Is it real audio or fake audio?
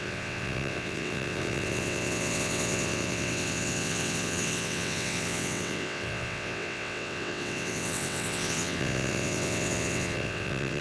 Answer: fake